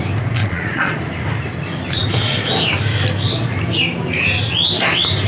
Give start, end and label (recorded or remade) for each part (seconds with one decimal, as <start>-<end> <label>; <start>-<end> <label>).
0.0-0.4 recorded; 0.4-1.0 remade; 1.0-5.3 recorded